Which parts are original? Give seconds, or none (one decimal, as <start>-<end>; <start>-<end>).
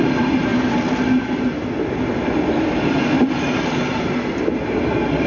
0.0-5.3